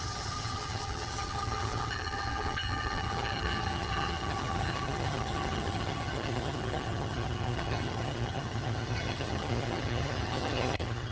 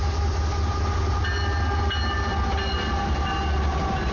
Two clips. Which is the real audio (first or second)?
second